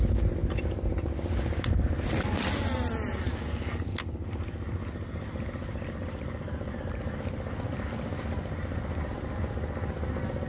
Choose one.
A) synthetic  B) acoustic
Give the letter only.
B